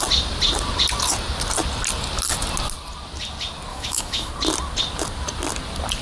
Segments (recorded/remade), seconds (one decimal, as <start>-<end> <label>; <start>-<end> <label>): 0.0-3.7 recorded; 3.7-4.3 remade; 4.3-6.0 recorded